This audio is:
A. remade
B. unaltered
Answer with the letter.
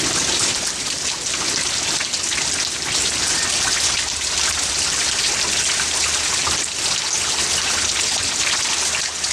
B